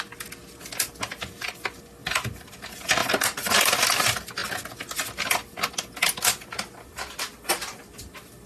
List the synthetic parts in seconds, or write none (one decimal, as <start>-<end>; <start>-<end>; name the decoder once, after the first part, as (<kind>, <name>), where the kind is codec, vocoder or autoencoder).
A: none